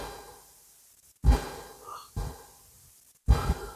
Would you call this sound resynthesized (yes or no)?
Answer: no